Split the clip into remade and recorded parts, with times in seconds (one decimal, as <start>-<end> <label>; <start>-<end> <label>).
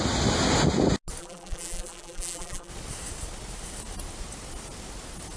0.0-1.2 recorded; 1.2-2.7 remade; 2.7-5.4 recorded